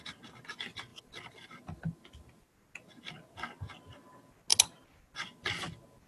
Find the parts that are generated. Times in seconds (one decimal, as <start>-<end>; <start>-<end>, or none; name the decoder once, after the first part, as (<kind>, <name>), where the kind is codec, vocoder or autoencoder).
0.9-1.6 (vocoder, BigVGAN v2)